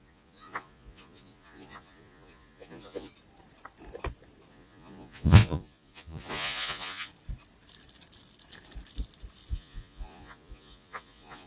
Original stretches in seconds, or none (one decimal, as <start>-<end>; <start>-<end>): 3.1-4.5; 7.1-9.5